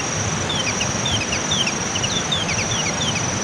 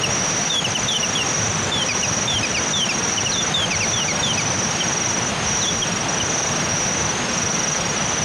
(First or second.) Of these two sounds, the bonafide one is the second